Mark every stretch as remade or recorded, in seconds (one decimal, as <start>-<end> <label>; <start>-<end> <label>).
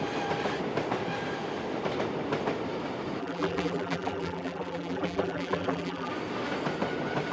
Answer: 0.0-3.2 recorded; 3.2-6.1 remade; 6.1-7.3 recorded